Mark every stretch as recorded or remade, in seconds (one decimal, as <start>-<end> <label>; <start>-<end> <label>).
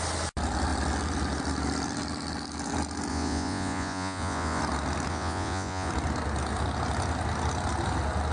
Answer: 0.0-3.1 recorded; 3.1-4.6 remade; 4.6-5.1 recorded; 5.1-5.9 remade; 5.9-8.3 recorded